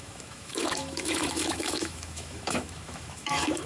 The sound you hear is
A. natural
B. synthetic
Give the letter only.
B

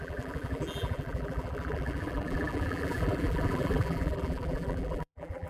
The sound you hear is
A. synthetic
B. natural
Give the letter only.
A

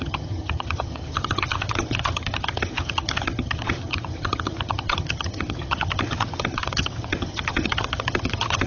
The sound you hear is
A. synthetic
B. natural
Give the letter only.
A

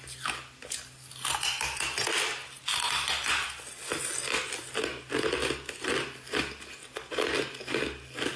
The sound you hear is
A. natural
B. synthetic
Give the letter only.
A